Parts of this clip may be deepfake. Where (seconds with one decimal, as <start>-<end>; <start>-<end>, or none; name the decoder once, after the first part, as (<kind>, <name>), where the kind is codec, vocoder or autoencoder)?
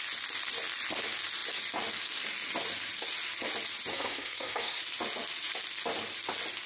3.9-4.8 (codec, SNAC)